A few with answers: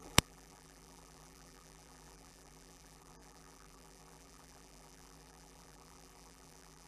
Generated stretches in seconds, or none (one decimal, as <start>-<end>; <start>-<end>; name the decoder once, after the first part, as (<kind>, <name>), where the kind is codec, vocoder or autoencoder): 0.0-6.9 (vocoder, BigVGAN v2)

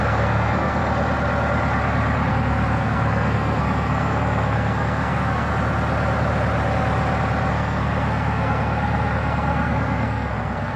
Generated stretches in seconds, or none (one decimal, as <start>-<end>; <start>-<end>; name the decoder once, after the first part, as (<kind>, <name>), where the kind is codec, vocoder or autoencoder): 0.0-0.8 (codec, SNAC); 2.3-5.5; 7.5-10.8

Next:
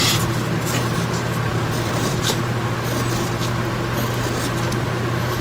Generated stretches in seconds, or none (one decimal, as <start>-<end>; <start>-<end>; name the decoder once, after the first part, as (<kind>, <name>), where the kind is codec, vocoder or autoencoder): 1.5-2.2 (vocoder, BigVGAN v2)

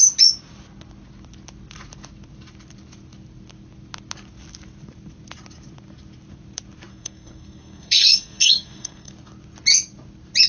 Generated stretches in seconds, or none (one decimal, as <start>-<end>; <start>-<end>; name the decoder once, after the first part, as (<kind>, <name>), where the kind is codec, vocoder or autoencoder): 6.9-9.1 (codec, SNAC)